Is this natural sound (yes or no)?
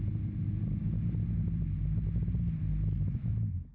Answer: yes